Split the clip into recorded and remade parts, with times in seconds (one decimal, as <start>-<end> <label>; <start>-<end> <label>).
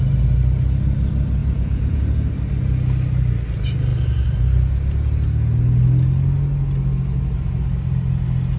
0.0-1.4 recorded; 1.4-2.0 remade; 2.0-8.6 recorded